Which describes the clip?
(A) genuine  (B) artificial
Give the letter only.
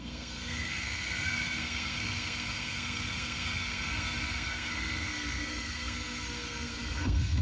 B